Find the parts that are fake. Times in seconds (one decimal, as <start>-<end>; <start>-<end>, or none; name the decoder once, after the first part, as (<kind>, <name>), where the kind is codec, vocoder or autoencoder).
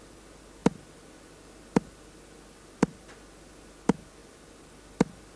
none